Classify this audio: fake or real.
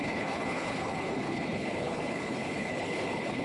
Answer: fake